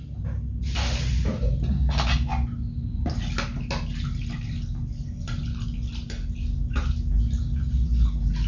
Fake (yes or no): no